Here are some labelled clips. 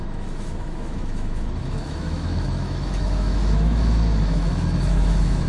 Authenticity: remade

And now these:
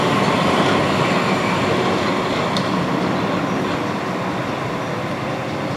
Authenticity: recorded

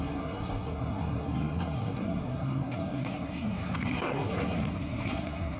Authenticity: remade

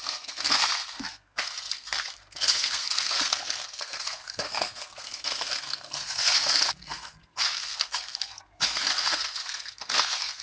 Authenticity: remade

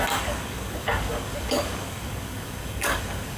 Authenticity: remade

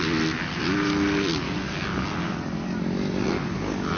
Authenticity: recorded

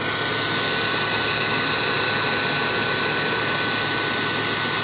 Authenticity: recorded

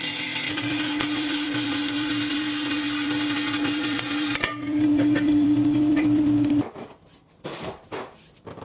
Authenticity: remade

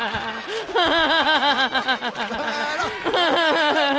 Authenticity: recorded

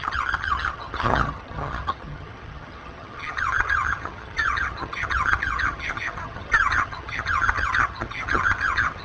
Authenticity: remade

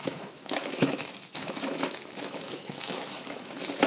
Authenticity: remade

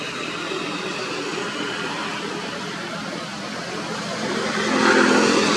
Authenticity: recorded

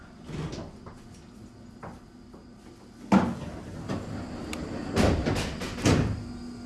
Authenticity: recorded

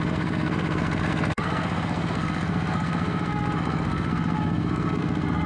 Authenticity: remade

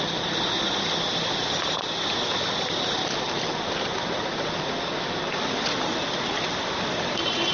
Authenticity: recorded